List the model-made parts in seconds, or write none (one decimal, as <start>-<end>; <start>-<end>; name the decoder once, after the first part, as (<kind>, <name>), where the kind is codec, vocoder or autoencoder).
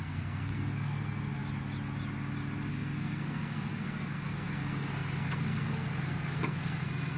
0.0-1.4 (codec, SNAC); 2.7-7.2